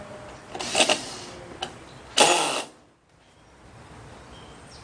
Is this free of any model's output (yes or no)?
yes